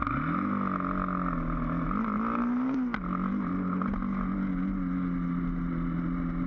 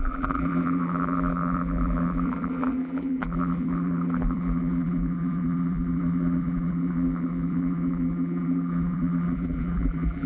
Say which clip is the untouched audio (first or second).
first